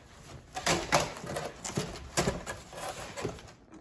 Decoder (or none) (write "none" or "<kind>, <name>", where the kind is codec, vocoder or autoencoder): none